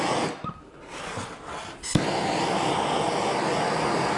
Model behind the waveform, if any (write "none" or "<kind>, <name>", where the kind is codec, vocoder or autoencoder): none